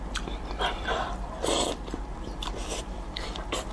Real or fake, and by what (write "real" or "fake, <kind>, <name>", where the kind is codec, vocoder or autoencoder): fake, vocoder, BigVGAN v2